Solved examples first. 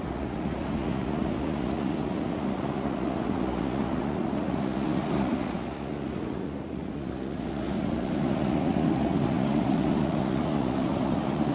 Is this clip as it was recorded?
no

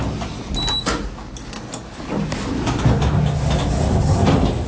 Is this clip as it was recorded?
yes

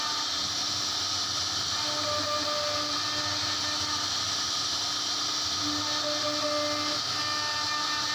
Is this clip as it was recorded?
yes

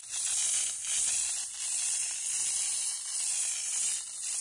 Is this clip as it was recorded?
yes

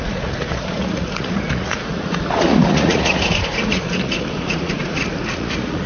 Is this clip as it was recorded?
no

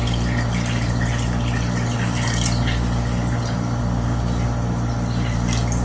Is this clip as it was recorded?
yes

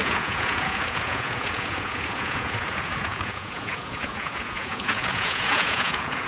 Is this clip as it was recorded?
no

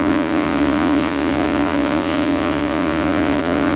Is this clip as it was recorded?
no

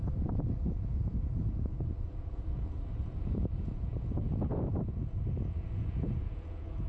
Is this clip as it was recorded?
no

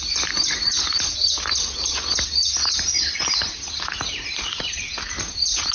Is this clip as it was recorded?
yes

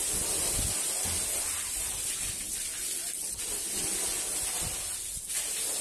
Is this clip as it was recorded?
yes